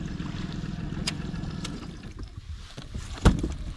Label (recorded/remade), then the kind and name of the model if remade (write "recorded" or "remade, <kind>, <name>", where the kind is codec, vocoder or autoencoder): recorded